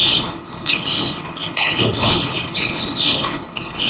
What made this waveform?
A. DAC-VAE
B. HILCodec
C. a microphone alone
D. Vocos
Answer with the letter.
B